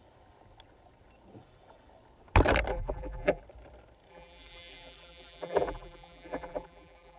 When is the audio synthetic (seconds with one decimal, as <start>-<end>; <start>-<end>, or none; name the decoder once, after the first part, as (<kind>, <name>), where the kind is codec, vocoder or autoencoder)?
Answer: 2.7-3.4 (vocoder, BigVGAN v2); 4.1-7.2